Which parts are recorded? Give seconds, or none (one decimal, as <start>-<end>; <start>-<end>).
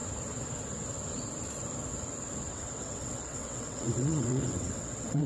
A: 0.0-2.5